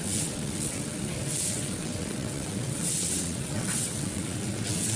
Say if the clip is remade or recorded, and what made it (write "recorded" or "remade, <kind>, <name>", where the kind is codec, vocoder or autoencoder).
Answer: remade, vocoder, WaveNeXt